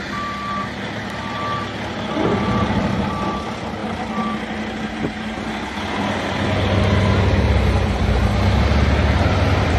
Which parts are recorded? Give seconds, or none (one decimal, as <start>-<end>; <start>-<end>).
0.0-9.8